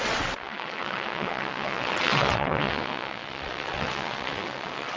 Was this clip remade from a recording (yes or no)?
yes